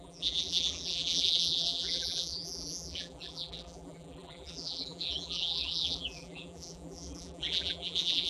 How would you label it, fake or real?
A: fake